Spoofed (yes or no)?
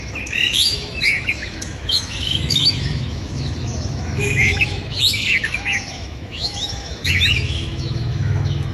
yes